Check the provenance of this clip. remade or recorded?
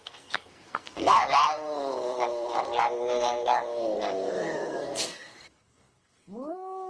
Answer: remade